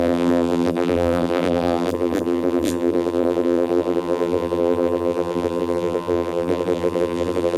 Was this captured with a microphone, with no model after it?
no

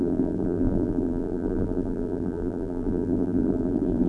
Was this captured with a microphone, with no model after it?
no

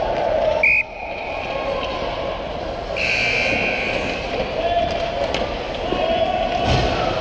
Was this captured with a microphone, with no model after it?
yes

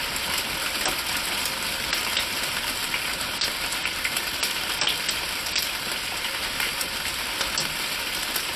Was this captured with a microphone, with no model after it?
yes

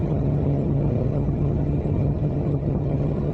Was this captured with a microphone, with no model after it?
no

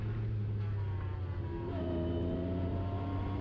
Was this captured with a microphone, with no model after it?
yes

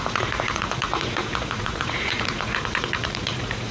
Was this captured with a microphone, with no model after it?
no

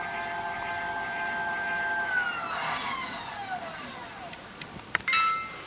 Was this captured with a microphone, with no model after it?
yes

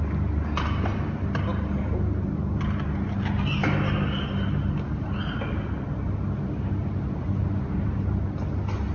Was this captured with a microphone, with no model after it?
yes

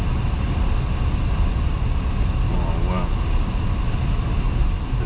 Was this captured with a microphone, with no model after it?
yes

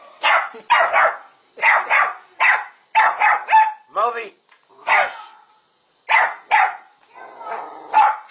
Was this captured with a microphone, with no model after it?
yes